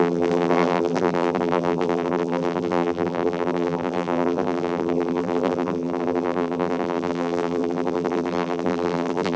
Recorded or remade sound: remade